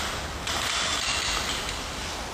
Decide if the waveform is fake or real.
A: real